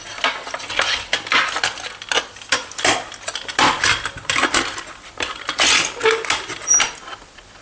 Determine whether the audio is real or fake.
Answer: real